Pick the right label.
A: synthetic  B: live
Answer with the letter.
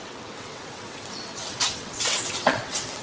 A